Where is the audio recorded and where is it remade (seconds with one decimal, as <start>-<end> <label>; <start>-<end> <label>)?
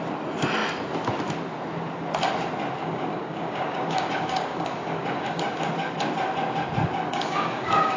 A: 0.0-2.8 recorded; 2.8-5.4 remade; 5.4-7.1 recorded; 7.1-8.0 remade